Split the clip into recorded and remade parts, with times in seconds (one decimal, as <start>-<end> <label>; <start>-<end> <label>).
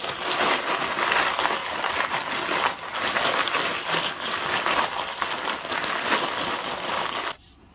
0.0-7.7 recorded